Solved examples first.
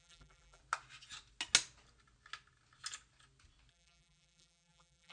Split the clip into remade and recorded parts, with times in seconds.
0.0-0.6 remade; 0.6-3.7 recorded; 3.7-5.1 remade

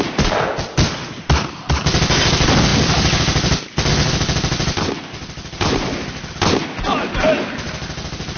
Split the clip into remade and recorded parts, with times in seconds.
0.0-2.7 recorded; 2.7-6.3 remade; 6.3-8.4 recorded

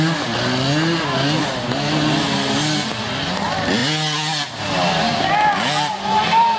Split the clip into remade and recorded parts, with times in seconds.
0.0-6.6 recorded

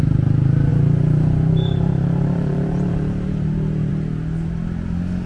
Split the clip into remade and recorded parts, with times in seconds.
0.0-0.7 recorded; 0.7-3.9 remade; 3.9-5.3 recorded

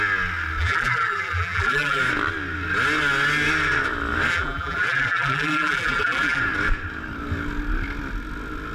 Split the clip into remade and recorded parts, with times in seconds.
0.0-0.6 recorded; 0.6-2.0 remade; 2.0-4.3 recorded; 4.3-6.4 remade; 6.4-8.7 recorded

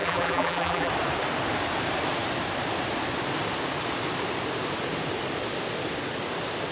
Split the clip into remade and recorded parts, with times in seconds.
0.0-0.9 remade; 0.9-6.7 recorded

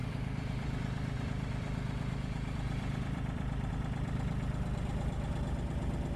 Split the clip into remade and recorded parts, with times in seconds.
0.0-3.7 remade; 3.7-6.2 recorded

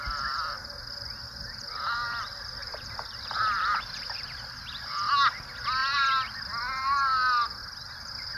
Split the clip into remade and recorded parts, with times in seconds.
0.0-2.6 recorded; 2.6-4.9 remade; 4.9-7.6 recorded; 7.6-8.4 remade